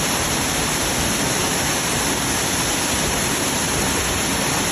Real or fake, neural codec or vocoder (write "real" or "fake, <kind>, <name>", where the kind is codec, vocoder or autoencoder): real